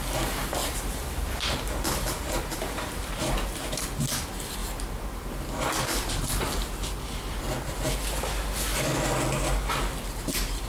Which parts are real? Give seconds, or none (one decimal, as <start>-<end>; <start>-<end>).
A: 0.0-0.6; 3.8-10.7